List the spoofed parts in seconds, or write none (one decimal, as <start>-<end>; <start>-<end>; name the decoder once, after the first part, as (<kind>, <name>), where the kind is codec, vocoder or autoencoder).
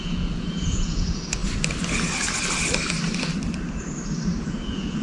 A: 0.0-1.4 (vocoder, Vocos); 4.4-5.0